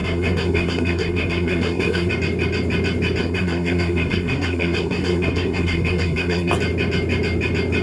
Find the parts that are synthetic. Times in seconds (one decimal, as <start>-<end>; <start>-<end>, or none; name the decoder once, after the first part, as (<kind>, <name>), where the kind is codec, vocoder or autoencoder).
0.0-2.1 (codec, SNAC); 3.2-6.5